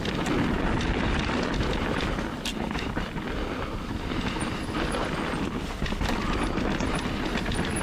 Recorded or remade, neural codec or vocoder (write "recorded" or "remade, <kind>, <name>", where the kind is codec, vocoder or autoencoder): recorded